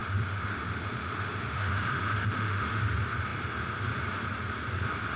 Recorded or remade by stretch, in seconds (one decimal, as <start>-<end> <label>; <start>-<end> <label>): 0.0-2.8 remade; 2.8-5.2 recorded